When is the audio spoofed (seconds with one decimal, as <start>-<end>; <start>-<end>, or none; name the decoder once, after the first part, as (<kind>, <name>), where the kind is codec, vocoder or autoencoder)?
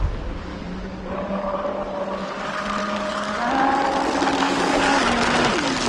0.5-1.0 (codec, DAC); 2.8-3.4; 4.4-5.1